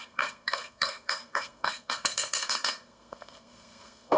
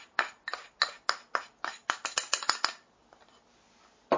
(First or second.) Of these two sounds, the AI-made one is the first